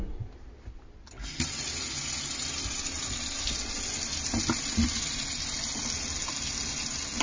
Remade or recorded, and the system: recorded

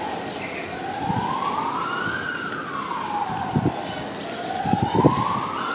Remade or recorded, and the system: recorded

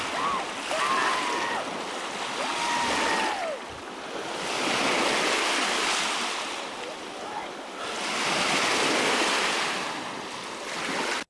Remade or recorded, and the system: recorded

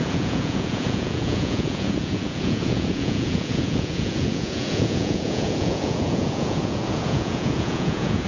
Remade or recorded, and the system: remade, vocoder, Vocos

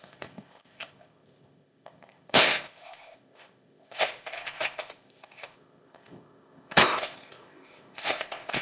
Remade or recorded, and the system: remade, codec, ZipCodec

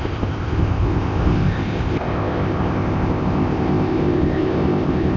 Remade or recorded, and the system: remade, codec, ZipCodec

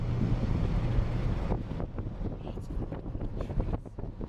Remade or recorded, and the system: recorded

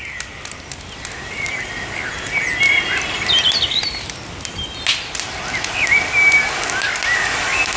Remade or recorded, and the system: recorded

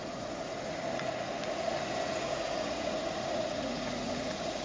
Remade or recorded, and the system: remade, vocoder, Vocos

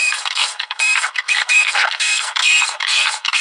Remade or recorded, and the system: remade, codec, SNAC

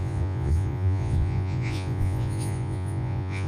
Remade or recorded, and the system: remade, vocoder, Vocos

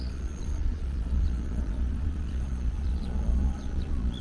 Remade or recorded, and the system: remade, vocoder, Vocos